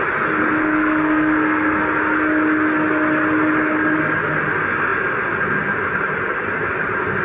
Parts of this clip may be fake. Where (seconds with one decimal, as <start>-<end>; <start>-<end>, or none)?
0.6-1.8